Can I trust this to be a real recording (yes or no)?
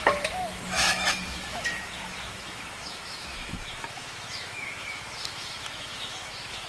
no